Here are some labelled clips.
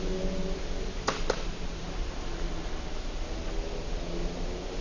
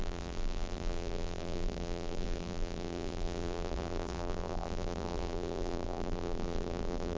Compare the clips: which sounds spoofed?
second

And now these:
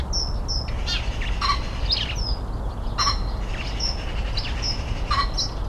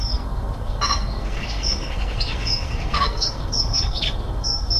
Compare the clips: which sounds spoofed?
second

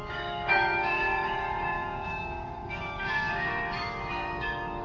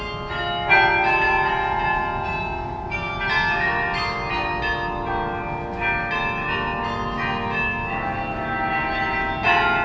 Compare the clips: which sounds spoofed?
first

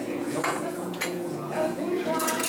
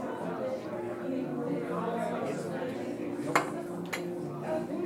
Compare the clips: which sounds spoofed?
first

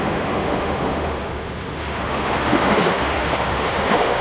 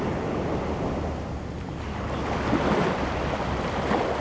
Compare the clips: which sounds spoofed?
first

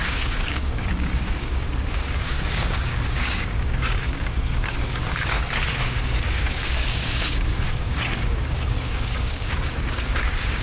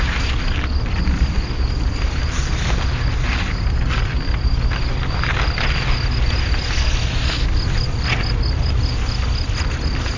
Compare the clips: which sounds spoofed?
first